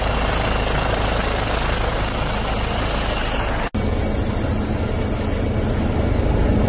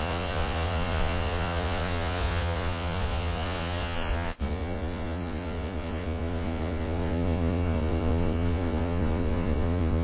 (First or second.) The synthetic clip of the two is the second